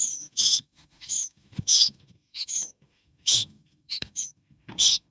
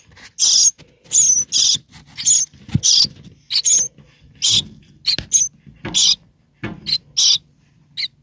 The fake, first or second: first